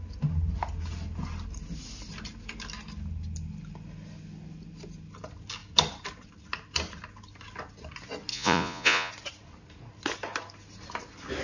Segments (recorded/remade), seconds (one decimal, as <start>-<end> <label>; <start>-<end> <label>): 0.0-8.3 recorded; 8.3-9.1 remade; 9.1-11.4 recorded